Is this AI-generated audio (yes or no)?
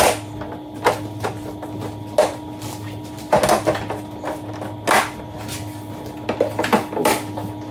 no